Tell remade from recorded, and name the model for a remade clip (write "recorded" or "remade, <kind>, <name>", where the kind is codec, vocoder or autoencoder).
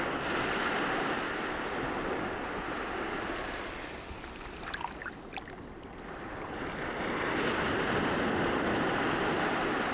recorded